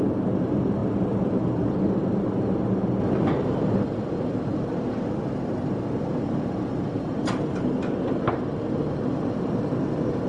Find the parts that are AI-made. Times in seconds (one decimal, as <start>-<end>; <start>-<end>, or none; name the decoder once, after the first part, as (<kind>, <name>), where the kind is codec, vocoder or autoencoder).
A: 0.0-10.3 (vocoder, BigVGAN v2)